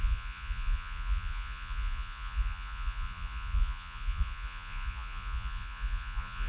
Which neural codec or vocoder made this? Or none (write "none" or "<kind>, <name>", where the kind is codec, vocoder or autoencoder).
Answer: vocoder, Vocos